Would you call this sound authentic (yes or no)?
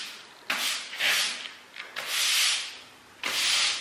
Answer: yes